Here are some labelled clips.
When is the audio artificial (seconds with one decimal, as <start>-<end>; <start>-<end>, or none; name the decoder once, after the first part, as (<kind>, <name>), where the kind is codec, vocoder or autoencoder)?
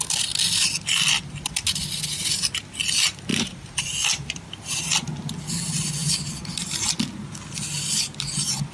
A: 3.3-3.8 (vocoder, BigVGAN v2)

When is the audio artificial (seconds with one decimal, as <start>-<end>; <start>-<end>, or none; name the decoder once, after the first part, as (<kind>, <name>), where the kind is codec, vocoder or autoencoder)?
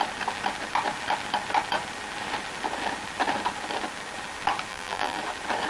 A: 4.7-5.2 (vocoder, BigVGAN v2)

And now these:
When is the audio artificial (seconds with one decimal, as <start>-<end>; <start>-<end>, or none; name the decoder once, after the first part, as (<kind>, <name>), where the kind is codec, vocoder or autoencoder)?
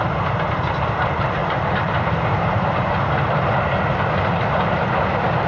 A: 1.4-3.5 (vocoder, BigVGAN v2)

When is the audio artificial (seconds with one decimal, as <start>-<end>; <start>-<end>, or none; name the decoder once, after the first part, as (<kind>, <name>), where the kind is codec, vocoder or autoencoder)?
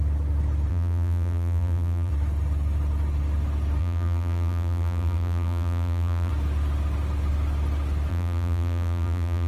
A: 0.7-2.1 (vocoder, BigVGAN v2); 3.8-6.3; 8.1-9.5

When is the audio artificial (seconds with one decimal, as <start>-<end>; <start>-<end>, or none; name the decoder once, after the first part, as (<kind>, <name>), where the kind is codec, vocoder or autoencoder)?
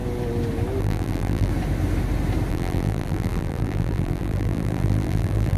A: 0.8-1.5 (vocoder, BigVGAN v2); 2.5-5.6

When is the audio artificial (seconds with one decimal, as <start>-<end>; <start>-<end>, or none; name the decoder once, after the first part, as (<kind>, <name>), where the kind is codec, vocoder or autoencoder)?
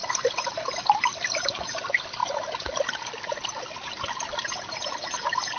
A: none